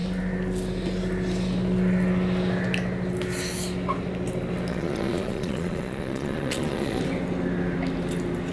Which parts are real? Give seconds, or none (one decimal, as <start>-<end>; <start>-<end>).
0.0-4.7; 7.0-8.5